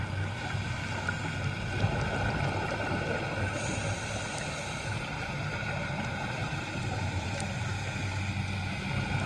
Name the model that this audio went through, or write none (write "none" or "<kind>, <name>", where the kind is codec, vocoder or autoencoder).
none